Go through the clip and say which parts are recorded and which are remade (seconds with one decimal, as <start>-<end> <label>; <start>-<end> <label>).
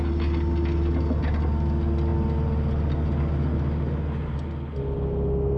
0.0-5.6 recorded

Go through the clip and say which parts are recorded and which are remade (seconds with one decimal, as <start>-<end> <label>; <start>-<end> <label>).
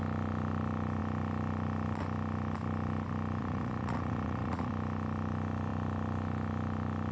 0.0-3.4 recorded; 3.4-4.7 remade; 4.7-7.1 recorded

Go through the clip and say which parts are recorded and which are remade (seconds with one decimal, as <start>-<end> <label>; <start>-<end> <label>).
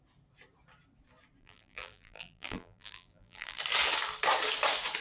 0.0-1.4 recorded; 1.4-3.6 remade; 3.6-5.0 recorded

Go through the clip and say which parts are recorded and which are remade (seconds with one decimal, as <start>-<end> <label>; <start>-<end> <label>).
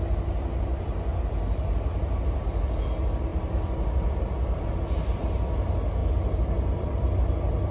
0.0-1.1 recorded; 1.1-1.8 remade; 1.8-3.3 recorded; 3.3-4.8 remade; 4.8-6.0 recorded; 6.0-7.7 remade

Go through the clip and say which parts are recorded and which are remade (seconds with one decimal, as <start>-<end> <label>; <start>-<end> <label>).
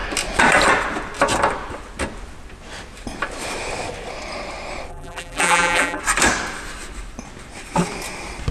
0.0-4.9 recorded; 4.9-6.0 remade; 6.0-8.5 recorded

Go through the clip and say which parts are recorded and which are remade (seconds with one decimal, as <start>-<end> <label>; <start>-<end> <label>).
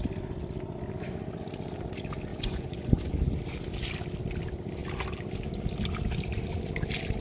0.0-2.3 recorded; 2.3-3.1 remade; 3.1-7.2 recorded